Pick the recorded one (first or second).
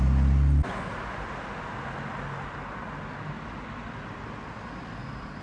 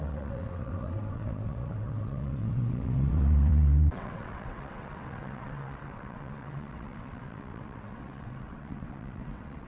first